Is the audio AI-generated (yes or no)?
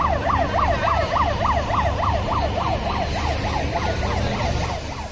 no